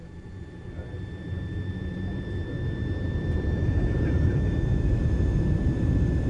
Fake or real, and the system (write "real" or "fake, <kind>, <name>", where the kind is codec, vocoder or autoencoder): fake, vocoder, BigVGAN v2